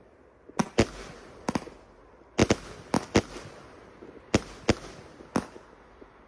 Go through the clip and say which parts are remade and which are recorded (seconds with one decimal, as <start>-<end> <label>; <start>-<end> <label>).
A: 0.0-6.3 recorded